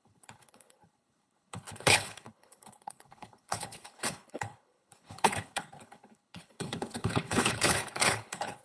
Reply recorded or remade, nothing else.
remade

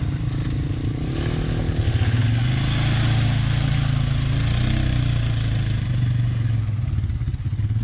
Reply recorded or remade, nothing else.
recorded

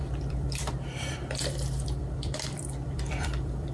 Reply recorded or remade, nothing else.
remade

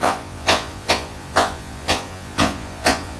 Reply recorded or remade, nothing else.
remade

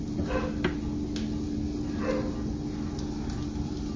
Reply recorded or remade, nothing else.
recorded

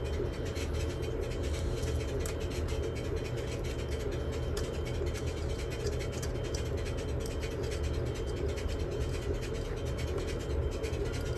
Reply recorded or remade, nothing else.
recorded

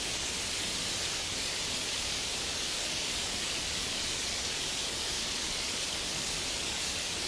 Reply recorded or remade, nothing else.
remade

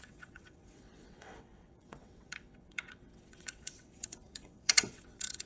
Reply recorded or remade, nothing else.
remade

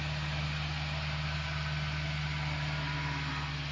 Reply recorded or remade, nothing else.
recorded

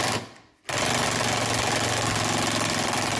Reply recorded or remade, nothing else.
recorded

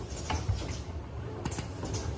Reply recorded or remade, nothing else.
recorded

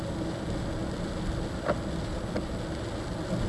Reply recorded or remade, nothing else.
recorded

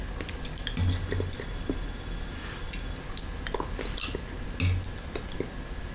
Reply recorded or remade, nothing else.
recorded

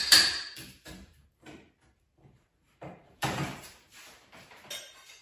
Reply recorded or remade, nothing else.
remade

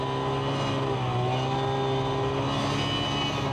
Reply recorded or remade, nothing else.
recorded